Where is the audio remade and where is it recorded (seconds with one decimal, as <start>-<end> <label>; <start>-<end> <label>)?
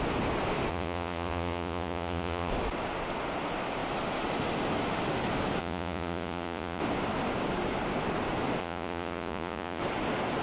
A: 0.0-0.7 recorded; 0.7-2.5 remade; 2.5-5.6 recorded; 5.6-6.8 remade; 6.8-8.6 recorded; 8.6-9.8 remade; 9.8-10.4 recorded